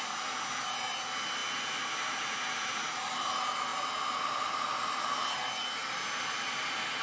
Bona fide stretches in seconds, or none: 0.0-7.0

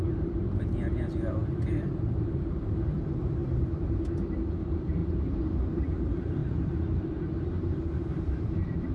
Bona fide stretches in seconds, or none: 3.4-4.6; 5.0-5.7